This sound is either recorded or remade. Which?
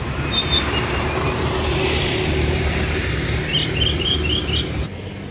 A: remade